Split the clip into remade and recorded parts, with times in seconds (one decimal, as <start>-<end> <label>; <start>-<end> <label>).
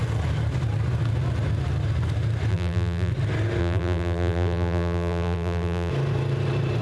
0.0-2.5 recorded; 2.5-3.1 remade; 3.1-3.6 recorded; 3.6-5.9 remade; 5.9-6.8 recorded